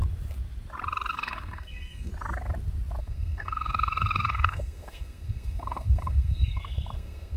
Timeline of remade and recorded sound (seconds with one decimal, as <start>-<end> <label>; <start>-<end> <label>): 0.0-1.1 recorded; 1.1-2.1 remade; 2.1-3.0 recorded; 3.0-7.4 remade